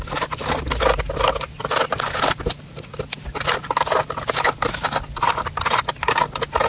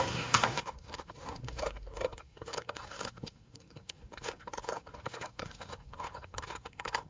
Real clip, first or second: first